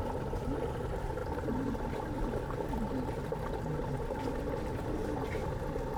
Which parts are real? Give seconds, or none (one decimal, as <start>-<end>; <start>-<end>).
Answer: 0.0-6.0

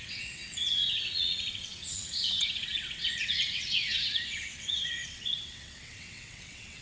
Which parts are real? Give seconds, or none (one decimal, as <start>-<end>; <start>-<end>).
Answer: none